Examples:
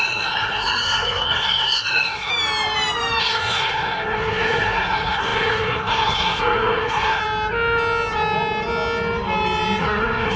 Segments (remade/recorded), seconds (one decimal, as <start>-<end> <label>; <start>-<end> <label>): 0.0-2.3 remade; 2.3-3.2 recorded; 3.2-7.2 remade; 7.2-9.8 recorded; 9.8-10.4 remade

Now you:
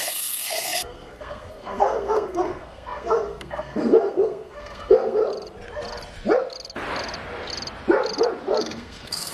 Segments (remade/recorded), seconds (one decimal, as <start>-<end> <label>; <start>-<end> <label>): 0.0-5.2 remade; 5.2-8.6 recorded; 8.6-9.3 remade

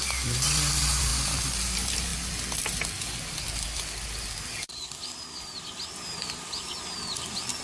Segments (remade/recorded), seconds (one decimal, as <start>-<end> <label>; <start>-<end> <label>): 0.0-7.6 recorded

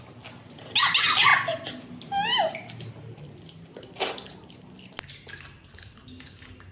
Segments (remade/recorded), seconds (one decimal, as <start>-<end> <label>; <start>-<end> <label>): 0.0-6.7 recorded

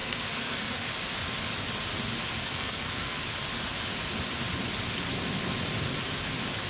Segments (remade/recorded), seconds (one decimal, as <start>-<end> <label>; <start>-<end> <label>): 0.0-0.9 remade; 0.9-2.4 recorded; 2.4-3.2 remade; 3.2-6.7 recorded